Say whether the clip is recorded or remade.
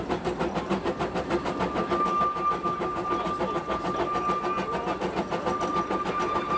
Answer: recorded